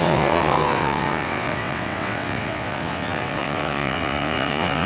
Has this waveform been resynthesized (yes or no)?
yes